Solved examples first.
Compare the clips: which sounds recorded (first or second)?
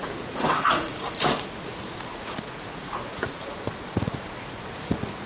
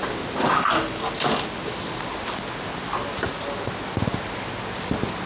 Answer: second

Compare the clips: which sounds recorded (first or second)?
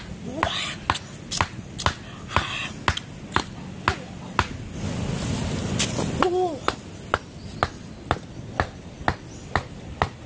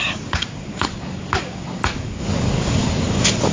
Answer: first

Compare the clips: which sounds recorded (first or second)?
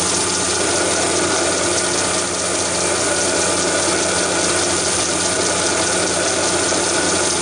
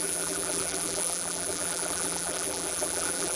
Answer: first